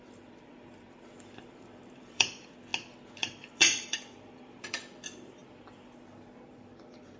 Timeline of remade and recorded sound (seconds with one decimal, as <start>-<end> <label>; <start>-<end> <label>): 0.0-2.7 remade; 2.7-3.2 recorded; 3.2-5.4 remade; 5.4-6.5 recorded; 6.5-7.2 remade